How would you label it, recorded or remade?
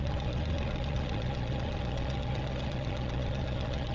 remade